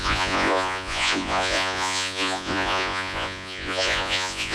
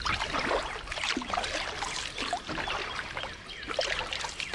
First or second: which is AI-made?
first